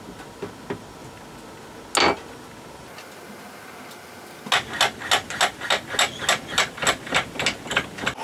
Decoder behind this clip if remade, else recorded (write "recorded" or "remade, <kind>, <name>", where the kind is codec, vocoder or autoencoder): recorded